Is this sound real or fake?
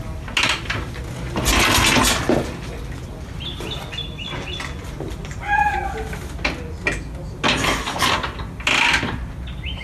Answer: real